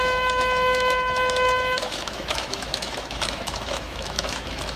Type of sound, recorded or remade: remade